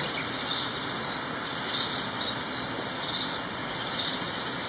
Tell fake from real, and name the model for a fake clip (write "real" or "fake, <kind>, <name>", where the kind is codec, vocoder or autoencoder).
real